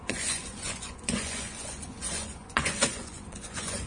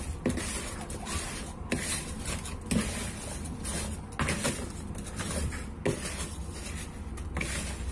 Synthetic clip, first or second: first